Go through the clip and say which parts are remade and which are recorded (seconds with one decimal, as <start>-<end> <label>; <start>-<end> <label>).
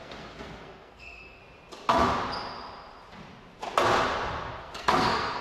0.0-1.4 remade; 1.4-4.6 recorded; 4.6-5.4 remade